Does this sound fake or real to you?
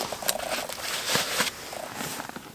real